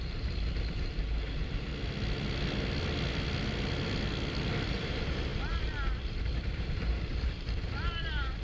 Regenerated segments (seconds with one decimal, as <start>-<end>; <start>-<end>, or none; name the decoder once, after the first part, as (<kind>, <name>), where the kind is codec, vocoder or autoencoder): 0.0-1.7 (vocoder, BigVGAN v2); 4.7-8.4